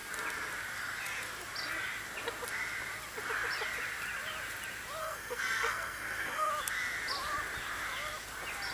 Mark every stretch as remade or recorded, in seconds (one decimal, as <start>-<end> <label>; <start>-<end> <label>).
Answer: 0.0-5.0 recorded; 5.0-6.5 remade; 6.5-8.7 recorded